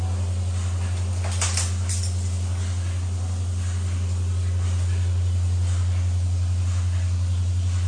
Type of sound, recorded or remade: recorded